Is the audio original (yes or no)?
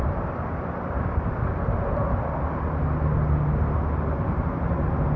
yes